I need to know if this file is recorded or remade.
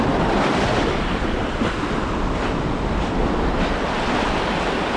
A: recorded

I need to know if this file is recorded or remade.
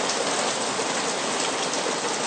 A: recorded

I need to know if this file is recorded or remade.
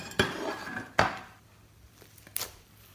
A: remade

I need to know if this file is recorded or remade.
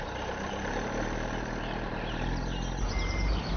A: remade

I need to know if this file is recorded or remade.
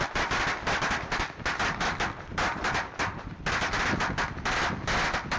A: recorded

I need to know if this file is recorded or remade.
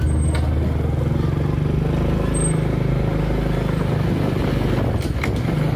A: recorded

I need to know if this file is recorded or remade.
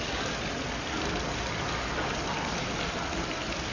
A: remade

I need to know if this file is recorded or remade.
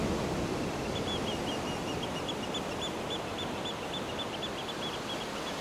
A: recorded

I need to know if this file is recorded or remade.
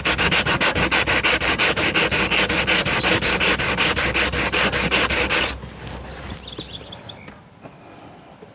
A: recorded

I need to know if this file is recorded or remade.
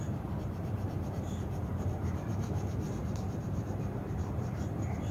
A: remade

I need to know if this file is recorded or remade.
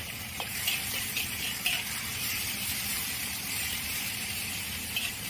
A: remade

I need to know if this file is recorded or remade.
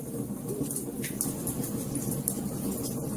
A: recorded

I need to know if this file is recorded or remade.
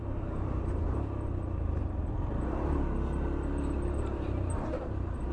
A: recorded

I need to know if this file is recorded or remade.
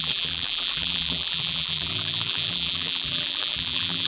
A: remade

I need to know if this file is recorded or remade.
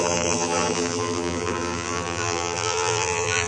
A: remade